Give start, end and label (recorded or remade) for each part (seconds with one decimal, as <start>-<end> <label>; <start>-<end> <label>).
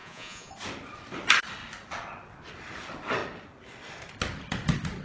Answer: 0.0-0.5 remade; 0.5-5.0 recorded